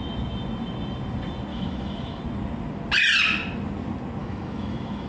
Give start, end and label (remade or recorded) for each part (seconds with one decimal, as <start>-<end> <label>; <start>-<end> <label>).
0.0-1.5 recorded; 1.5-2.2 remade; 2.2-4.2 recorded; 4.2-5.1 remade